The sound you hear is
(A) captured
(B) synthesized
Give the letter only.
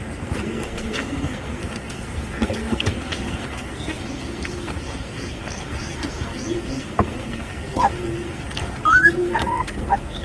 B